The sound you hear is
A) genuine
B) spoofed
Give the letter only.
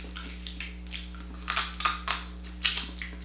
A